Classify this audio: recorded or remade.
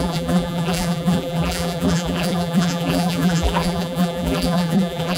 remade